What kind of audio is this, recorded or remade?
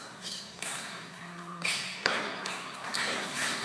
remade